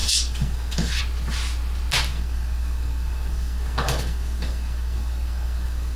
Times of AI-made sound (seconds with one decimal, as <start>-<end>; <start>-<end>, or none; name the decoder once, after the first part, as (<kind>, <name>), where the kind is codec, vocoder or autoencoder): 0.0-1.0 (codec, SNAC); 2.1-6.0